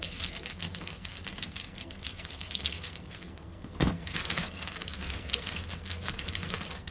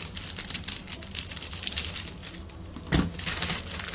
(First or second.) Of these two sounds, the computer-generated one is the first